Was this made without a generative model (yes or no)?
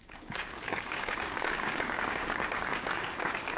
no